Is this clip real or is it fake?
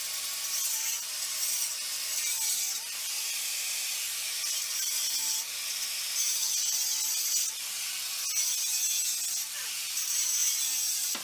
real